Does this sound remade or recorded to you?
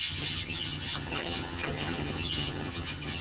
remade